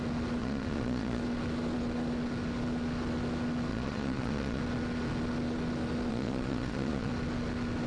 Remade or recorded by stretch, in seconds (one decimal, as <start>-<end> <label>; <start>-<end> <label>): 0.0-0.4 recorded; 0.4-1.2 remade; 1.2-3.7 recorded; 3.7-4.6 remade; 4.6-6.1 recorded; 6.1-7.1 remade; 7.1-7.9 recorded